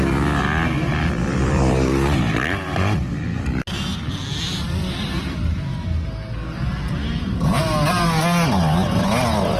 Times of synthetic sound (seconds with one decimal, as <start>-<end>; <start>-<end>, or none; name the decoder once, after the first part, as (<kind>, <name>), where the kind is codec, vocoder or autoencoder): 0.9-5.7 (vocoder, BigVGAN v2)